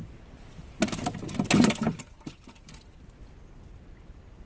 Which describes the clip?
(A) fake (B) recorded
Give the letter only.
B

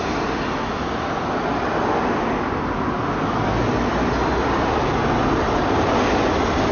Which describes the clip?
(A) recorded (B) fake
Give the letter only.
A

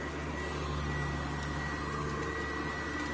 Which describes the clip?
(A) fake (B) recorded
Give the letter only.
B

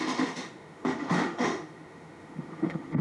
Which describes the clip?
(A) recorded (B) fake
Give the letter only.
B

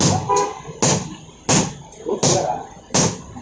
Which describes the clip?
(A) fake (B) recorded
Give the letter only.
B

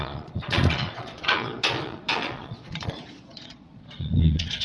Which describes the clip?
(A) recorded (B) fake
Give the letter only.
B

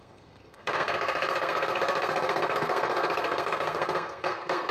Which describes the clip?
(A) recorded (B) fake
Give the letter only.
B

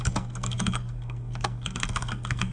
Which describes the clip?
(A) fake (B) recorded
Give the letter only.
A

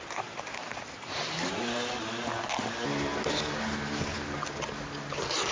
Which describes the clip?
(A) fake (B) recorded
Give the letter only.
B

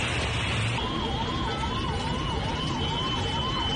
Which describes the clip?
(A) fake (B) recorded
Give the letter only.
B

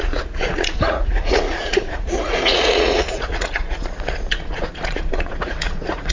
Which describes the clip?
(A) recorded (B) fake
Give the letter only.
B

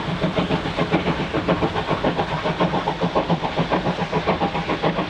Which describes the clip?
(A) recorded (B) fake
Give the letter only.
A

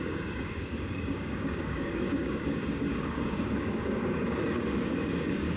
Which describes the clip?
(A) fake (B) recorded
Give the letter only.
A